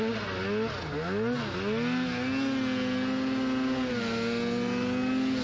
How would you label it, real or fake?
real